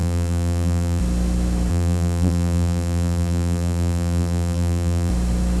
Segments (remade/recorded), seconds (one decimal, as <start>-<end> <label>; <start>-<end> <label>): 0.0-1.0 remade; 1.0-1.7 recorded; 1.7-5.1 remade; 5.1-5.6 recorded